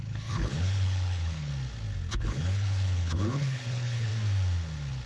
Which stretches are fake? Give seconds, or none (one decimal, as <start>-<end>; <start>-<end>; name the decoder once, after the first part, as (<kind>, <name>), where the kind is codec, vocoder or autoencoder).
0.0-1.5 (codec, HILCodec); 2.1-4.1